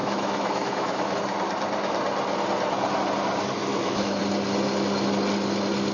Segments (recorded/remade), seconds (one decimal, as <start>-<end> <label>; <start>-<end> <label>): 0.0-1.2 remade; 1.2-3.6 recorded; 3.6-4.2 remade; 4.2-5.9 recorded

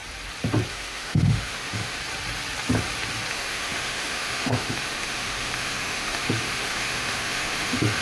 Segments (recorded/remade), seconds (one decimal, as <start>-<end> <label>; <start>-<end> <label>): 0.0-0.7 recorded; 0.7-2.0 remade; 2.0-3.3 recorded; 3.3-8.0 remade